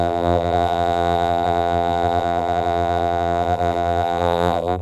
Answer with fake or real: fake